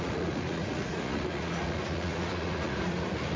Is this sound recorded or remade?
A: remade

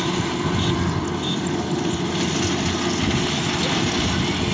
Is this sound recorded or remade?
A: recorded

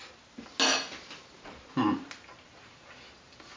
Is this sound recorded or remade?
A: recorded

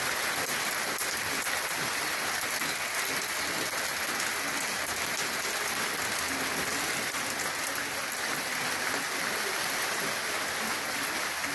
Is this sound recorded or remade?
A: recorded